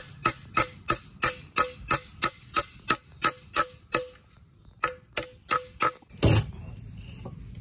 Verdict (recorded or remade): recorded